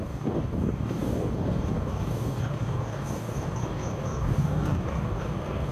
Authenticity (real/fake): fake